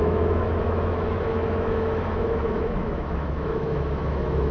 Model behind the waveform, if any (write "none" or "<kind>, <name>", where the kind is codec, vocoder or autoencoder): autoencoder, DAC-VAE